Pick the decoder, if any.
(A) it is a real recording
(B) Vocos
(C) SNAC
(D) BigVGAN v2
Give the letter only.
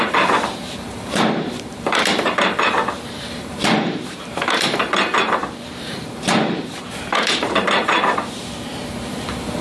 D